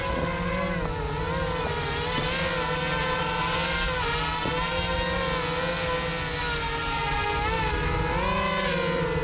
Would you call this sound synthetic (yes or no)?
no